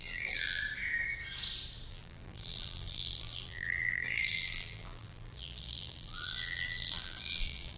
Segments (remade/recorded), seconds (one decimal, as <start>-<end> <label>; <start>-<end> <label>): 0.0-0.6 remade; 0.6-1.9 recorded; 1.9-7.8 remade